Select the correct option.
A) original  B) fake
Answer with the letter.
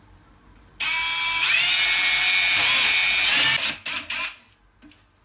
A